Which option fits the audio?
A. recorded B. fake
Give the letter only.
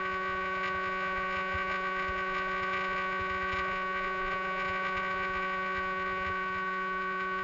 B